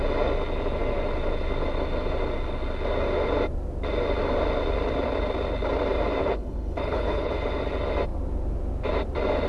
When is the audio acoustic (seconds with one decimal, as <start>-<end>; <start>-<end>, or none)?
0.0-6.2; 7.3-9.5

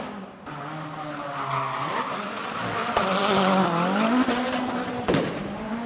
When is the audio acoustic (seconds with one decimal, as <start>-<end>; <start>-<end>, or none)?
0.0-5.9

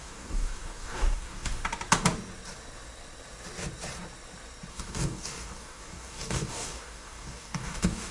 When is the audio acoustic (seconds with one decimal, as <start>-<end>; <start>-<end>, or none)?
1.6-4.7

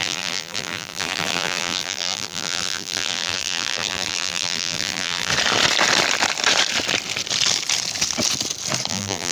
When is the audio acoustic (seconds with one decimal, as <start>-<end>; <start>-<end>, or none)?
5.3-8.9

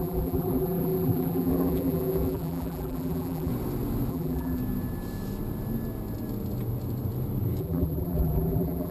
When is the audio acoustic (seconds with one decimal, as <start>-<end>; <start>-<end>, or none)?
3.5-4.1; 4.6-7.6

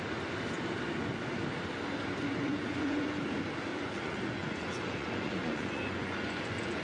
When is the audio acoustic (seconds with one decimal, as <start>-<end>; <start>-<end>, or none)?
0.0-2.3; 3.2-3.7